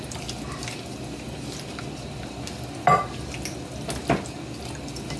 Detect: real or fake real